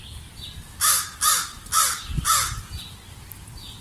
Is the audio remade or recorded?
recorded